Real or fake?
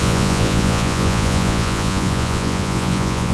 fake